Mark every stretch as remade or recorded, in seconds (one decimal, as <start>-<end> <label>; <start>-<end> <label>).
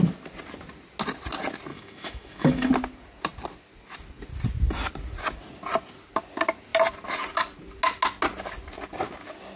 0.0-1.7 recorded; 1.7-2.7 remade; 2.7-9.6 recorded